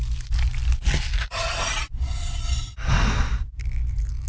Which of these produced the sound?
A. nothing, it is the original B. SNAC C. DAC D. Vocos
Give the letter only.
A